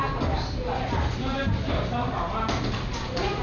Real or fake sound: real